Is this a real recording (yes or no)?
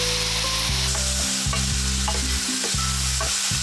yes